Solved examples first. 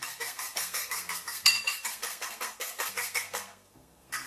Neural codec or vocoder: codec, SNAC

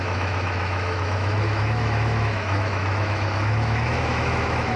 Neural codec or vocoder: autoencoder, DAC-VAE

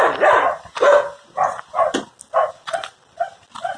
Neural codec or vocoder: none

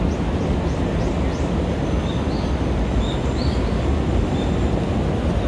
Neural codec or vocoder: none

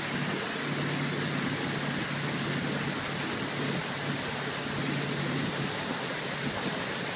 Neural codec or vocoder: none